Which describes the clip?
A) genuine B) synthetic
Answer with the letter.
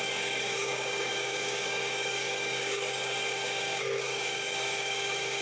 B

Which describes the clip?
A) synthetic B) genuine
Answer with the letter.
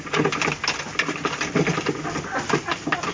B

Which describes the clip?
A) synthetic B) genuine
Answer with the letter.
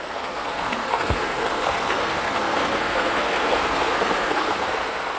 A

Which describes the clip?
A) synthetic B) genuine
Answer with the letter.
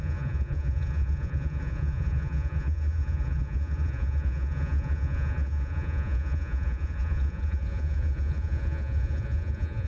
A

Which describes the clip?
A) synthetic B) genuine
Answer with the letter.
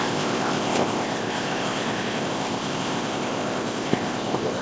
A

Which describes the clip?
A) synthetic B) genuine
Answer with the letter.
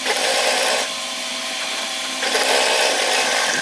B